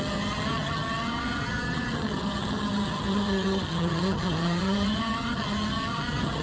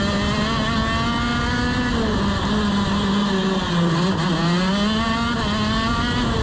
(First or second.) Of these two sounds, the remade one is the first